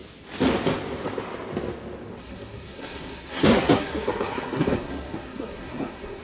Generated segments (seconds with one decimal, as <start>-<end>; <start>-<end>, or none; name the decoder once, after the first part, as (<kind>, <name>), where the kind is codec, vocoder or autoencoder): 2.2-6.2 (codec, SNAC)